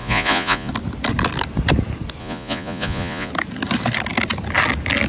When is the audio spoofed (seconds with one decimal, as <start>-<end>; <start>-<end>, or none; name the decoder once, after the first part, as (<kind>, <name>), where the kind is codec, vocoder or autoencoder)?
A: 0.0-0.7 (vocoder, Vocos); 2.2-3.3